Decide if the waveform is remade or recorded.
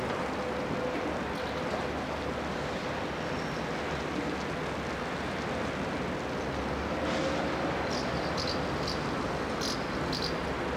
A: recorded